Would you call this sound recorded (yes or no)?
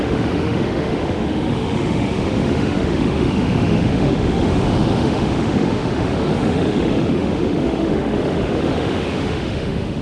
no